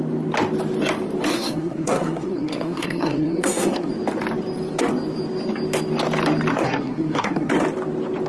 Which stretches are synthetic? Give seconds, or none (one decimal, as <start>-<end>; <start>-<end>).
1.3-3.9; 6.5-7.5

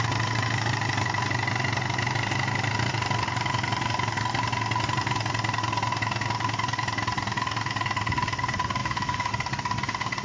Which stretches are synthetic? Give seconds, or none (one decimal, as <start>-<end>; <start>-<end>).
8.8-9.3